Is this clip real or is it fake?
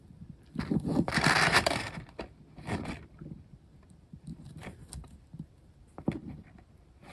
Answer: fake